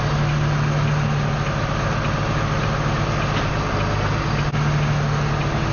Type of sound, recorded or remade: recorded